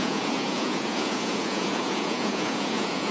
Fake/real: fake